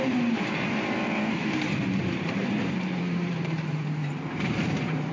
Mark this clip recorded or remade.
remade